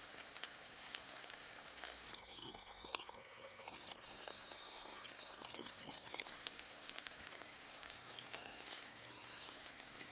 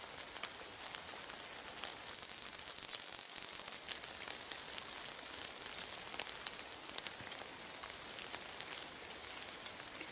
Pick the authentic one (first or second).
second